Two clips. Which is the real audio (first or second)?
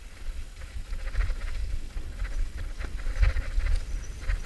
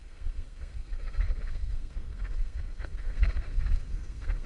first